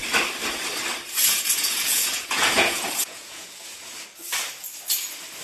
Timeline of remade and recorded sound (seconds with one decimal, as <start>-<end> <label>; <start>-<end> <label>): 0.0-1.2 recorded; 1.2-3.9 remade; 3.9-5.4 recorded